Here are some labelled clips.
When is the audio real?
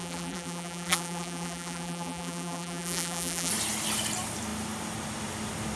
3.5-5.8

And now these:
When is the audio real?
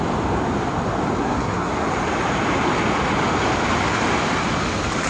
0.0-1.2; 1.7-5.1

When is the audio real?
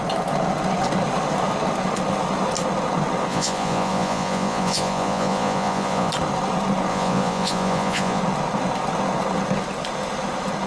0.0-3.3; 6.1-6.9; 8.2-10.7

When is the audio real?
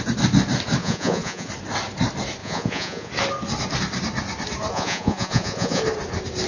0.0-0.8; 1.5-2.4; 3.1-4.7; 5.8-6.5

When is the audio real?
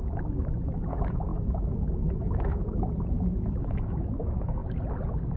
4.6-5.4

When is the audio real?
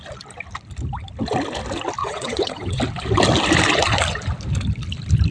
0.0-2.0; 2.8-5.3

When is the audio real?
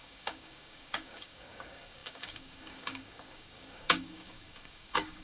none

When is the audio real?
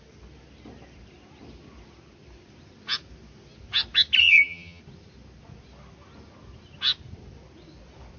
0.0-4.2; 4.8-8.2